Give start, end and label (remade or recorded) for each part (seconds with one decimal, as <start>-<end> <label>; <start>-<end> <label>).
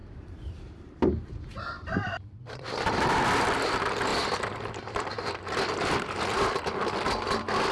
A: 0.0-7.7 remade